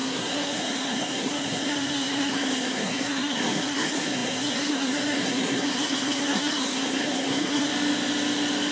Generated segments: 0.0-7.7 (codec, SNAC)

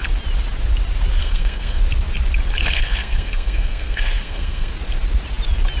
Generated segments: 1.2-1.8 (codec, SNAC); 2.6-4.7

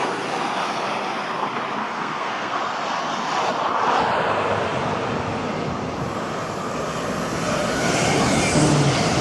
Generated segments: 1.8-2.6 (codec, SNAC)

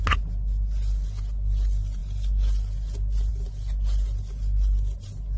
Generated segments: none